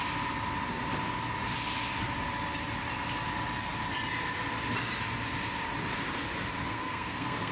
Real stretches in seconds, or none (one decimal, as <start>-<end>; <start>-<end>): 0.0-6.7